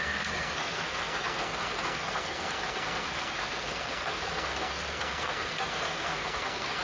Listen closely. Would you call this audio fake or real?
fake